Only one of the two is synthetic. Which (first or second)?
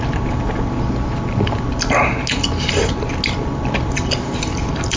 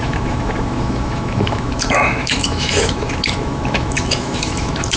second